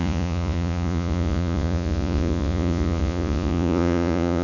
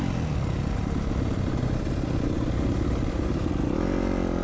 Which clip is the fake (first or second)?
first